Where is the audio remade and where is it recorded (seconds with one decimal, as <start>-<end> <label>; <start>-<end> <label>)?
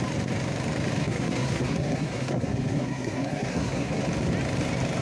0.0-1.0 recorded; 1.0-4.0 remade; 4.0-5.0 recorded